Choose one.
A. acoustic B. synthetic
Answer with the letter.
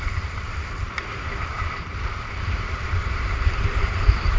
B